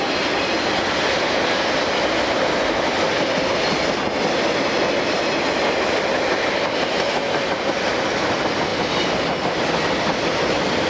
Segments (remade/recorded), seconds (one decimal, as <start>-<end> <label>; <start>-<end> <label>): 0.0-8.7 recorded; 8.7-9.6 remade; 9.6-10.9 recorded